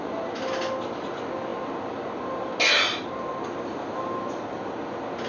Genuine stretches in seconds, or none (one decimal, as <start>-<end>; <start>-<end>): 0.0-5.3